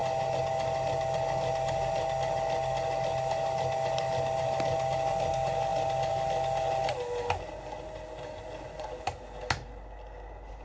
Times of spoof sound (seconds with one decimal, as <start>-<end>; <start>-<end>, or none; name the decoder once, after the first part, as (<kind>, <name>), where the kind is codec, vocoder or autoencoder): none